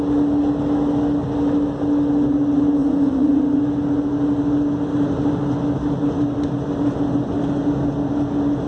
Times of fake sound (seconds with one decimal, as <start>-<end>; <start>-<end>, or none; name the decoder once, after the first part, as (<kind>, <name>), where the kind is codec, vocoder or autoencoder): 2.8-3.4 (vocoder, Vocos)